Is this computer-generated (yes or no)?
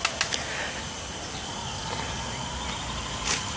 no